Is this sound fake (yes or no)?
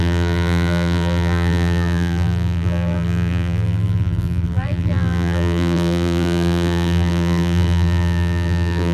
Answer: yes